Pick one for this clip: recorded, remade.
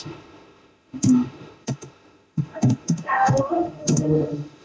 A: remade